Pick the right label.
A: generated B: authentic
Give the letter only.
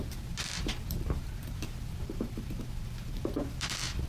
A